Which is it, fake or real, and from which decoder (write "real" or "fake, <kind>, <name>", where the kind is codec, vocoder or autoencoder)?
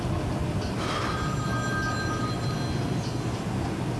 real